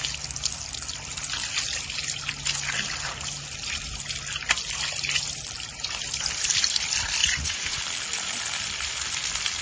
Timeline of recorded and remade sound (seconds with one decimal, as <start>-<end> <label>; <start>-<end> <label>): 0.0-7.2 recorded; 7.2-7.8 remade; 7.8-9.6 recorded